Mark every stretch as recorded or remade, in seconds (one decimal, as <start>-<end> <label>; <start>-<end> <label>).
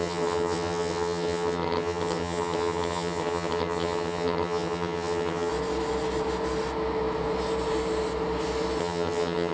0.0-5.5 remade; 5.5-8.8 recorded; 8.8-9.5 remade